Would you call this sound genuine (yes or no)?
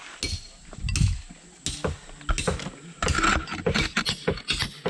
yes